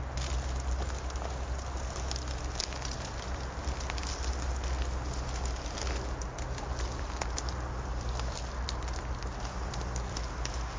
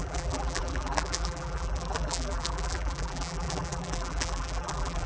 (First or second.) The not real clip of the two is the second